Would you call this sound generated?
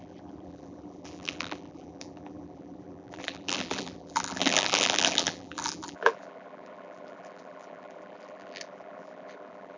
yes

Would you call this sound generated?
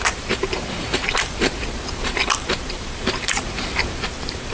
yes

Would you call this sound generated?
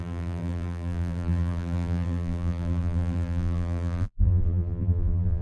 yes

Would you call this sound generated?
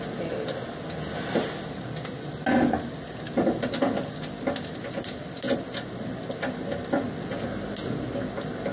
no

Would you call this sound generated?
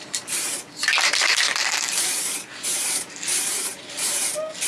yes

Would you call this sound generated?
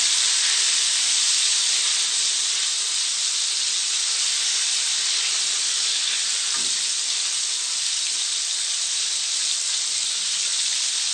no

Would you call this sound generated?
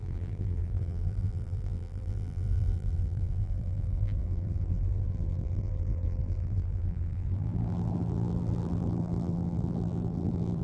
yes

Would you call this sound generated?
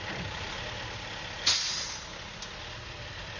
no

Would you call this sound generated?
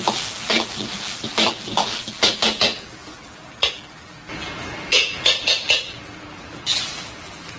yes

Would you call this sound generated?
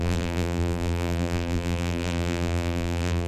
yes